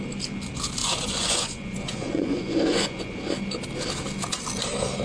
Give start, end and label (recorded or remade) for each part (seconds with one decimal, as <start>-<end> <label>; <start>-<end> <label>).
0.0-0.8 recorded; 0.8-3.1 remade; 3.1-5.0 recorded